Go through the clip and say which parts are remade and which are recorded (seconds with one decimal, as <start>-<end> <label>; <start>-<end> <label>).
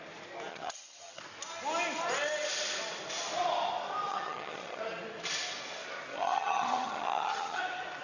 0.0-0.5 recorded; 0.5-1.2 remade; 1.2-4.1 recorded; 4.1-4.8 remade; 4.8-6.1 recorded; 6.1-7.6 remade; 7.6-8.0 recorded